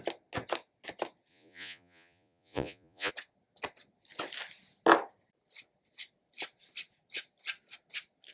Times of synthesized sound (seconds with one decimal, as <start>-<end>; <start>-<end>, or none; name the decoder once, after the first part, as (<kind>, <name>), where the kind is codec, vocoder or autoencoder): 1.3-3.1 (vocoder, Vocos)

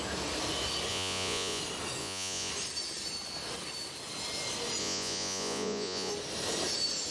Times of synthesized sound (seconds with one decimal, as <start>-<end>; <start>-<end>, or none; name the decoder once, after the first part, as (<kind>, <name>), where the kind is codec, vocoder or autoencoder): 0.9-1.6 (vocoder, Vocos); 2.0-2.5; 4.8-6.1

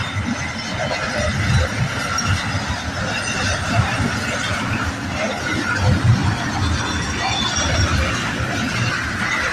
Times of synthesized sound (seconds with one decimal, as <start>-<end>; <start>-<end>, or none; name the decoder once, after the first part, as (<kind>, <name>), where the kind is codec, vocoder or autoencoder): none

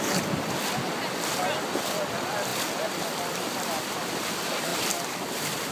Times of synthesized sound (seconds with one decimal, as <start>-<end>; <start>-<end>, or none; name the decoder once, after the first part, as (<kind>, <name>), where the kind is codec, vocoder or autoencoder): none